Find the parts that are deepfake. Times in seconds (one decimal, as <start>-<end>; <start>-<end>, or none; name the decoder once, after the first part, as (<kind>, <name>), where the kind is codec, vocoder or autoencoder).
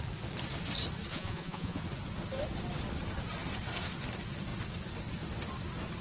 1.1-1.8 (vocoder, Vocos)